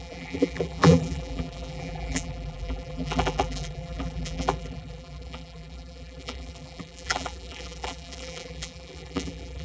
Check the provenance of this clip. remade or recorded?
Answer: remade